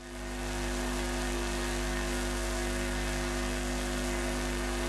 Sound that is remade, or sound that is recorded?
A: remade